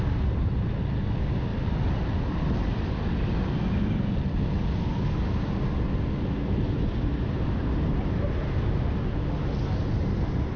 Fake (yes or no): no